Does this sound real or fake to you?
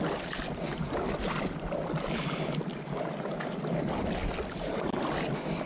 real